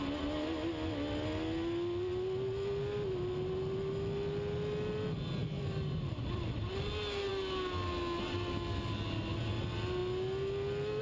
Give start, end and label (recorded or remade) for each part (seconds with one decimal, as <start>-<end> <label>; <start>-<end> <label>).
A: 0.0-5.4 recorded; 5.4-6.6 remade; 6.6-11.0 recorded